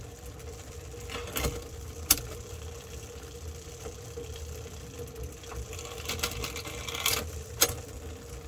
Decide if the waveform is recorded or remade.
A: recorded